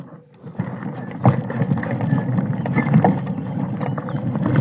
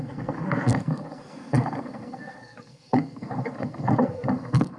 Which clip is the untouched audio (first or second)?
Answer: first